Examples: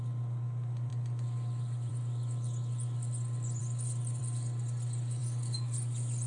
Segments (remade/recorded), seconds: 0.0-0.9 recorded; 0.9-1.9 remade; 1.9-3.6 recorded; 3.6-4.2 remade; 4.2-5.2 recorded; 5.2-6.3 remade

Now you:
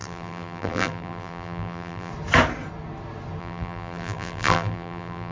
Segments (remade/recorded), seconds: 0.0-2.1 remade; 2.1-3.4 recorded; 3.4-5.3 remade

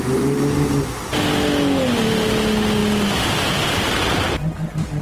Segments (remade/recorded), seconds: 0.0-5.0 recorded

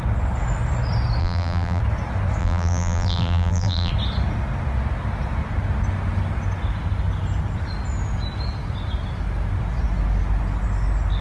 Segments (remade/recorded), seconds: 0.0-1.2 recorded; 1.2-1.8 remade; 1.8-2.4 recorded; 2.4-3.9 remade; 3.9-11.2 recorded

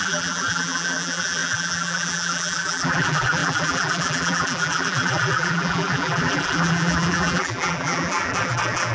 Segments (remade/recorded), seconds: 0.0-8.9 remade

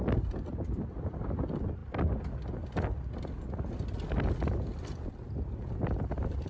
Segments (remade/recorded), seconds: 0.0-1.8 remade; 1.8-5.1 recorded; 5.1-6.5 remade

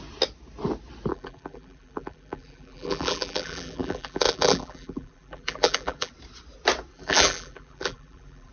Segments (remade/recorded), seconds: 0.0-1.1 recorded; 1.1-6.1 remade; 6.1-6.9 recorded; 6.9-8.5 remade

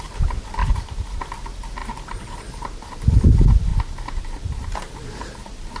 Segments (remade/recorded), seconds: 0.0-0.6 recorded; 0.6-1.3 remade; 1.3-1.8 recorded; 1.8-2.5 remade; 2.5-3.7 recorded; 3.7-5.0 remade; 5.0-5.8 recorded